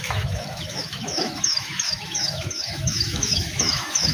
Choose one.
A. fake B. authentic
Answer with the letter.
A